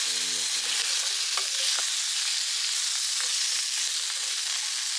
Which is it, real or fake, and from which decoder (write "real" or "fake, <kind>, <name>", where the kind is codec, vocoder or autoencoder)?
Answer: real